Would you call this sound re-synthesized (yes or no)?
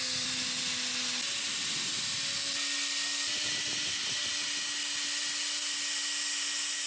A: no